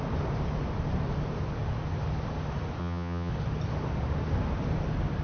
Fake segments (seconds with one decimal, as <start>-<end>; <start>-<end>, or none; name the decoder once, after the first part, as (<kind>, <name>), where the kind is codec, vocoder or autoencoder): 2.8-3.3 (vocoder, HiFi-GAN)